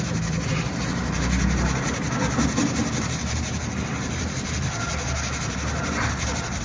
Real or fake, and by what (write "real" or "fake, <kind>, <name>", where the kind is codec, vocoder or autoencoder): fake, vocoder, BigVGAN v2